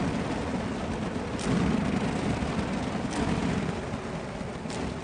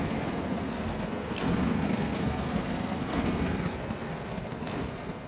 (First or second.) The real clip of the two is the first